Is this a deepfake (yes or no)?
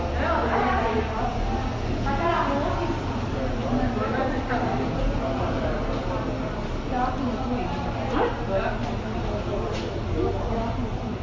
no